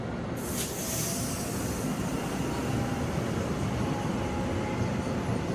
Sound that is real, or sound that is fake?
real